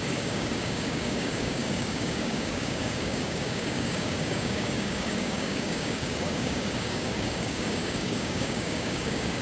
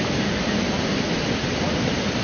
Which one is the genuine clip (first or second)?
second